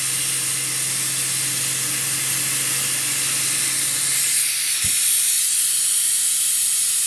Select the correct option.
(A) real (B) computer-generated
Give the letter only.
A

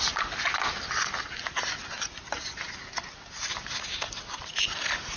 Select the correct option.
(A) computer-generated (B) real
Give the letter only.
B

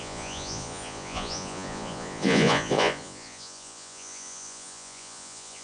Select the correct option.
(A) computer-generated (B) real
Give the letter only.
A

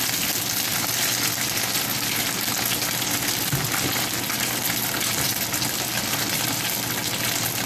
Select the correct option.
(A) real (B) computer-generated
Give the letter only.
A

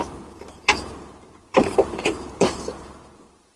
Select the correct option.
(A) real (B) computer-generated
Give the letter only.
B